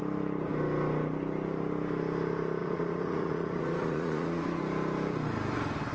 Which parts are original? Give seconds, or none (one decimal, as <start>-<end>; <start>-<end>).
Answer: 0.0-2.6; 4.6-5.9